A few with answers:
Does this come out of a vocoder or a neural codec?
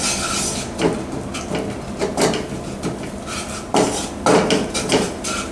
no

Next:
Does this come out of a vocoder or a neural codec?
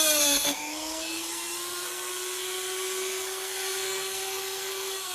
yes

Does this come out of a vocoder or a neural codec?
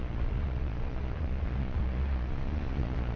yes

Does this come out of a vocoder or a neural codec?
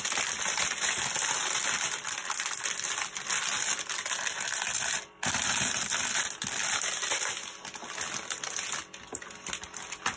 no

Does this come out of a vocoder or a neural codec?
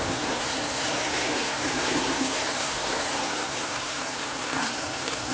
yes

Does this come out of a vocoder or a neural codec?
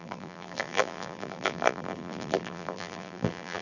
yes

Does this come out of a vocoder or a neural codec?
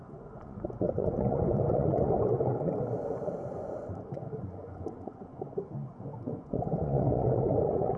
yes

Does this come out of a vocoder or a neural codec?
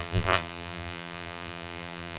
yes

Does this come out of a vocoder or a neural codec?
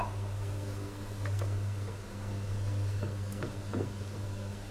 yes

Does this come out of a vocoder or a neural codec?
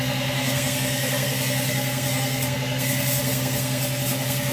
yes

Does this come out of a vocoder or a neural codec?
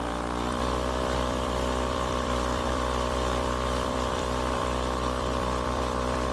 yes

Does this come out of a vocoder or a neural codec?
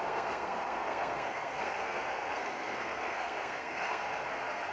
yes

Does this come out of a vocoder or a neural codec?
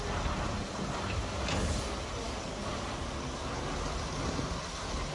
no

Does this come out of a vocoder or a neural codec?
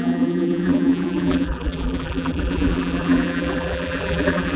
yes